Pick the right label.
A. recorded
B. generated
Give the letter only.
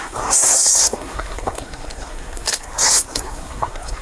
B